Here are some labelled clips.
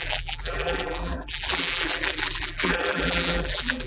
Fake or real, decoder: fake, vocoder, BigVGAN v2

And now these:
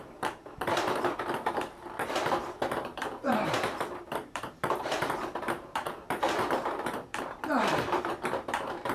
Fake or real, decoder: fake, vocoder, BigVGAN v2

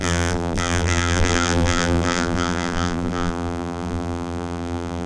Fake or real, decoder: fake, vocoder, BigVGAN v2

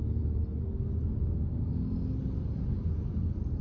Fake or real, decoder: real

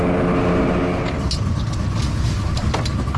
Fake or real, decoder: real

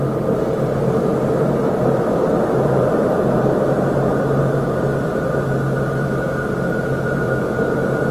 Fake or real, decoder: fake, vocoder, BigVGAN v2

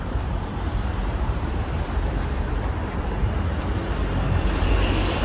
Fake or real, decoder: fake, vocoder, BigVGAN v2